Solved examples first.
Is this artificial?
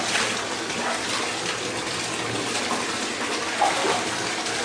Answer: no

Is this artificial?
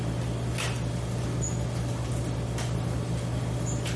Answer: no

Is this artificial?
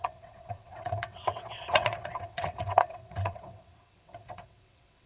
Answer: yes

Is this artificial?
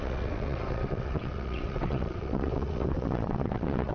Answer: yes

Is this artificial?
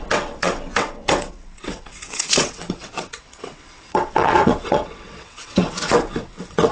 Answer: yes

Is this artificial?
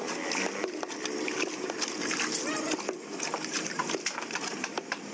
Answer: no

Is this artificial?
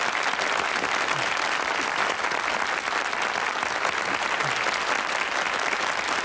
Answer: no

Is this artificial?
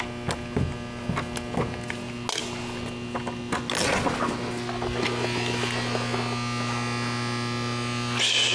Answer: no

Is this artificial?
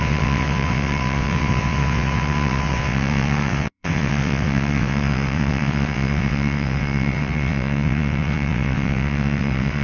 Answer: yes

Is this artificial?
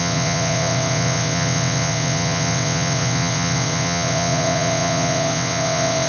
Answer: yes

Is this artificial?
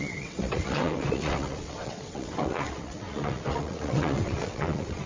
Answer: yes